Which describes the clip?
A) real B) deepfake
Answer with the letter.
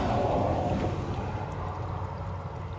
A